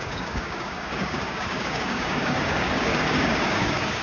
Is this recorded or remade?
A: remade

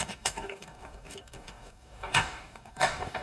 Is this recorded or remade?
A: remade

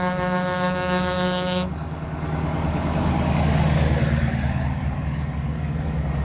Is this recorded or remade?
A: remade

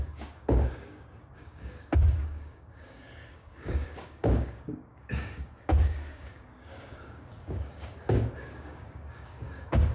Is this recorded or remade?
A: remade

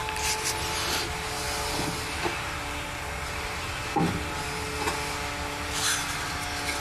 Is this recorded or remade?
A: recorded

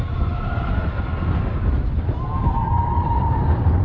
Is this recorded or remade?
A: recorded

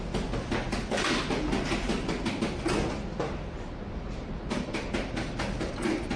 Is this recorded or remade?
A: recorded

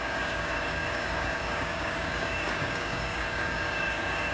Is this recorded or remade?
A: remade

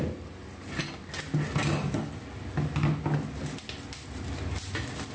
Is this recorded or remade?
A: recorded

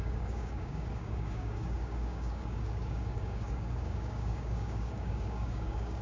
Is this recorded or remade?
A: remade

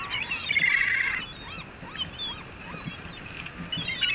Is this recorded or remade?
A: recorded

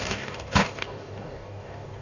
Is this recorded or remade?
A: remade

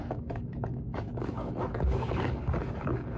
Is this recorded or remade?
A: remade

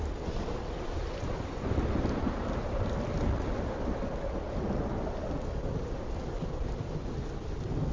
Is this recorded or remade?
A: recorded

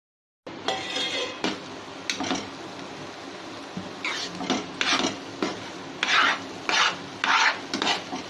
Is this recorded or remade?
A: recorded